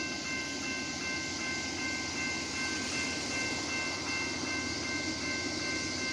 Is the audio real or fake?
real